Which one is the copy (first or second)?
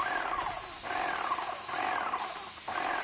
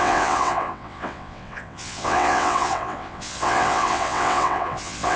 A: second